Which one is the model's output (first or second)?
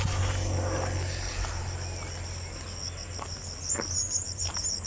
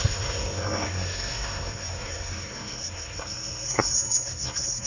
second